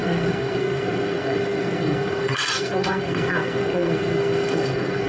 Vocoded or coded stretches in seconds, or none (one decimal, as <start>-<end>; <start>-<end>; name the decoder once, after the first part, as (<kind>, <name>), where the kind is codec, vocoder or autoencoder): 0.0-5.1 (codec, SNAC)